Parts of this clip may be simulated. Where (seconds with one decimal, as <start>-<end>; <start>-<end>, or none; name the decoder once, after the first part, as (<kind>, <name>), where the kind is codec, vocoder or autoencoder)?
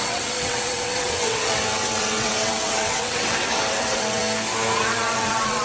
0.0-4.2 (vocoder, WaveNeXt); 4.8-5.6